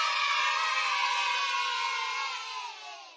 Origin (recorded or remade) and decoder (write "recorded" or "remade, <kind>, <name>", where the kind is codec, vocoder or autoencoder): recorded